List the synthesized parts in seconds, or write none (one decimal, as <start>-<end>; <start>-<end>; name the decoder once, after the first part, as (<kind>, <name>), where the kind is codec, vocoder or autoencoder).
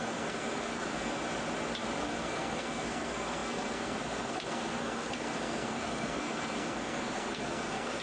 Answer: 0.0-1.2 (codec, SNAC); 2.0-8.0